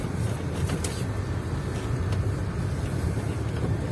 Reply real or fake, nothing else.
real